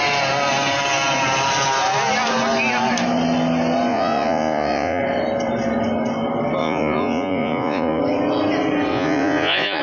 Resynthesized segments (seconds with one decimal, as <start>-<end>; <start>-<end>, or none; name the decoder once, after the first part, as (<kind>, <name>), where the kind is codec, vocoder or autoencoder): 3.9-5.0 (vocoder, Vocos); 6.6-8.0; 8.9-9.8